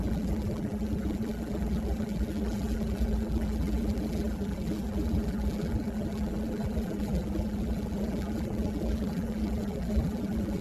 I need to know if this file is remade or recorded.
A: remade